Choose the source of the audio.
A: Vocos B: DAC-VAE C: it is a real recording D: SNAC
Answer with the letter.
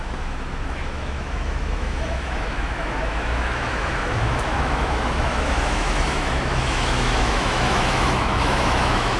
B